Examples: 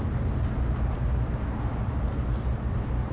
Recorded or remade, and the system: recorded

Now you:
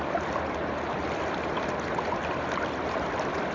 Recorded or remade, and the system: recorded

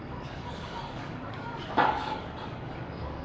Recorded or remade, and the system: remade, codec, DAC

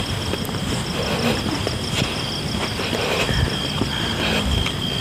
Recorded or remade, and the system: recorded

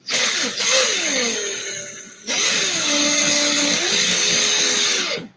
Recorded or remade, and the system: remade, codec, DAC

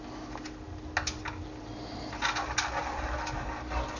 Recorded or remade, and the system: recorded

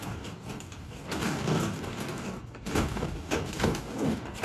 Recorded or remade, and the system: remade, codec, DAC